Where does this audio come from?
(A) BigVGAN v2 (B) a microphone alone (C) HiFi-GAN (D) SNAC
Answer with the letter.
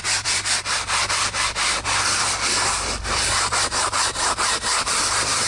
A